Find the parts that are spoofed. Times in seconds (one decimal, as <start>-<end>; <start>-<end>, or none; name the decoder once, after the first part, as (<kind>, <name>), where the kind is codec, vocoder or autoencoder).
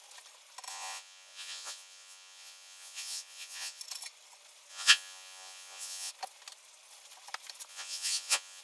0.7-3.8 (vocoder, Vocos); 4.7-6.1; 7.7-8.6